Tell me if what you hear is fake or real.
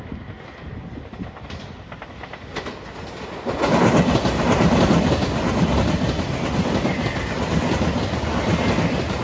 real